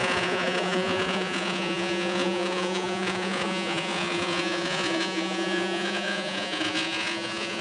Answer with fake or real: fake